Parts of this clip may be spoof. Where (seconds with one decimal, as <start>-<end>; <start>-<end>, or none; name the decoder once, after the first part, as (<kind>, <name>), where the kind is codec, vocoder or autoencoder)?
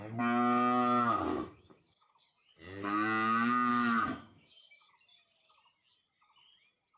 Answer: 1.3-2.1 (autoencoder, DAC-VAE); 3.7-4.9